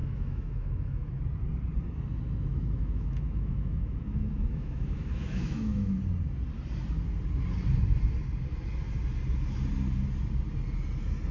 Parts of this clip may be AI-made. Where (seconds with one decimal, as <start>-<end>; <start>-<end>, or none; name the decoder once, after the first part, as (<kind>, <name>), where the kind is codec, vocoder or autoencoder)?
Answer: 0.0-1.2 (autoencoder, DAC-VAE); 2.5-6.0